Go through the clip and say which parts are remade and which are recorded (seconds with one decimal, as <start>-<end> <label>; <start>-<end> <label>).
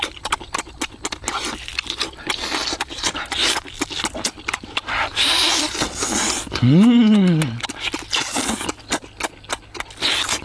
0.0-10.4 recorded